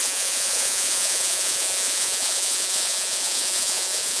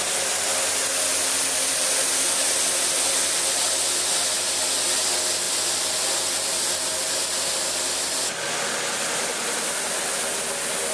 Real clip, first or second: second